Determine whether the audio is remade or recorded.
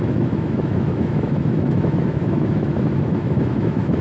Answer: remade